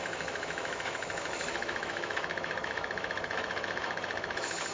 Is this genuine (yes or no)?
no